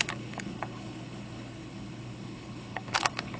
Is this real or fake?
fake